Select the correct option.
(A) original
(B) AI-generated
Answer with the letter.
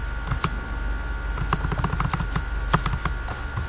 A